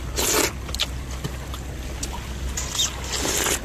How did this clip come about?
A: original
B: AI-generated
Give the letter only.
A